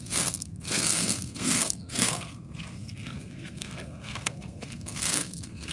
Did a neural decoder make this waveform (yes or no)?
yes